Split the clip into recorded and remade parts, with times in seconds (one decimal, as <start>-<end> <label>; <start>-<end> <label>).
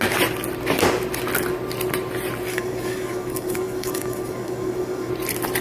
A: 0.0-2.5 recorded; 2.5-5.1 remade; 5.1-5.6 recorded